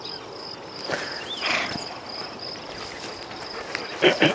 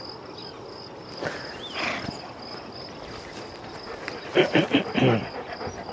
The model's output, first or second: first